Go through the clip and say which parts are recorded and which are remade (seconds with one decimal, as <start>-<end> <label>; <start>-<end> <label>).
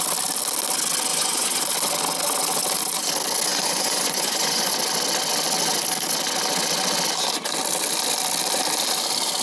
0.0-1.1 recorded; 1.1-1.6 remade; 1.6-3.5 recorded; 3.5-4.7 remade; 4.7-9.4 recorded